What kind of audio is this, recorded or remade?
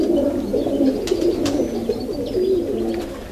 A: recorded